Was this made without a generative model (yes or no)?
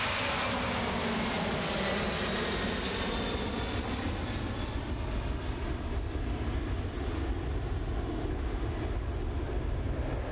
yes